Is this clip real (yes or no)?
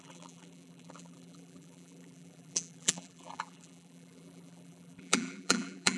no